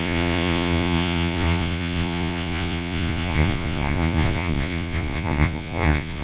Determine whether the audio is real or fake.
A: fake